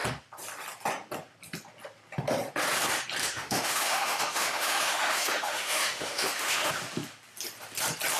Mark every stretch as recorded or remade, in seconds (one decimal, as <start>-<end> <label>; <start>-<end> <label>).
0.0-3.2 recorded; 3.2-6.7 remade; 6.7-8.2 recorded